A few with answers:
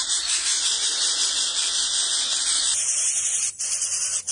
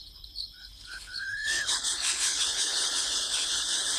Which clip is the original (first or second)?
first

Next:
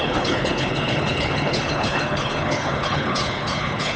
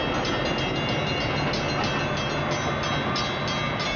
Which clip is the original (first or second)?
second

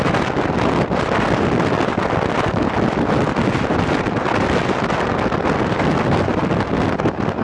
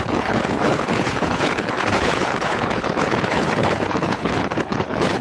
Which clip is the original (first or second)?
first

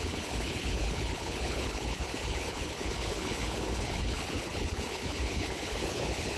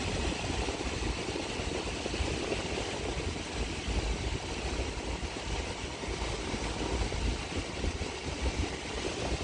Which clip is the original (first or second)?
second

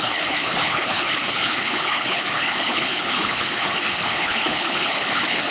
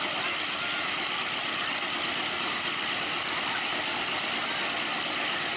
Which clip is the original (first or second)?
second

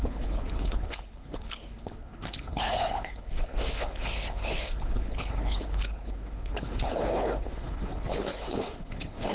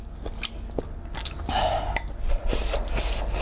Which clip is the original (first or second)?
second